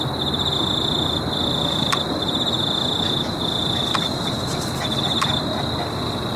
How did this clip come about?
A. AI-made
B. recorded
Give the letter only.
B